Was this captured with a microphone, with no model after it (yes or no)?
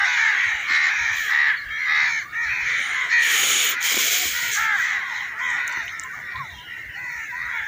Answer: yes